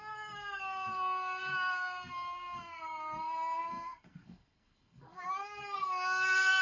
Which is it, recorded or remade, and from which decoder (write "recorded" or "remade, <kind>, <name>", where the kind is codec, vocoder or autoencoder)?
remade, codec, SNAC